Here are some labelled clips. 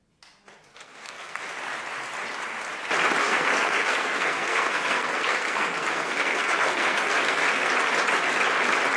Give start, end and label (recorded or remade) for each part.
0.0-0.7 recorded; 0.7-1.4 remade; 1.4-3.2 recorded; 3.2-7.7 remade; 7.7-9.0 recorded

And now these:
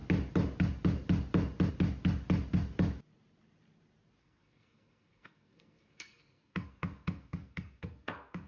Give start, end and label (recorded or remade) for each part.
0.0-4.2 recorded; 4.2-8.5 remade

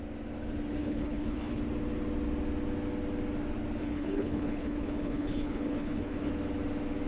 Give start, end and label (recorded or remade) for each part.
0.0-0.8 recorded; 0.8-1.6 remade; 1.6-3.8 recorded; 3.8-6.3 remade; 6.3-7.1 recorded